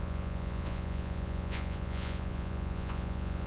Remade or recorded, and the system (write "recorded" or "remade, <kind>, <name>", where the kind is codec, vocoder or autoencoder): remade, vocoder, Vocos